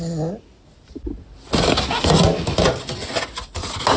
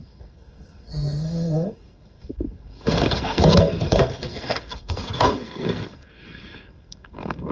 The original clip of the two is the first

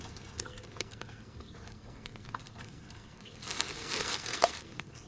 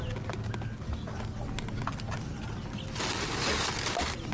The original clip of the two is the second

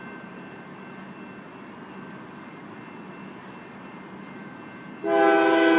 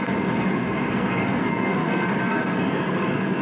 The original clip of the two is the first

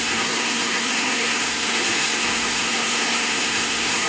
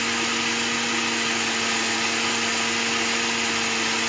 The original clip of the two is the second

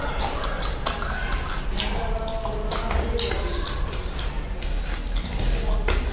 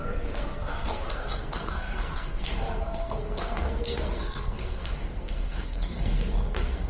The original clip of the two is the first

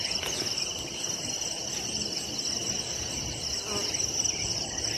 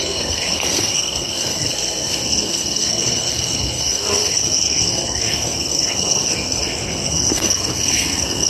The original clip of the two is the first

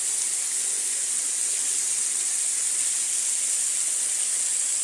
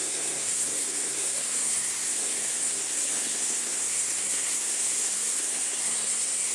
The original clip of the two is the first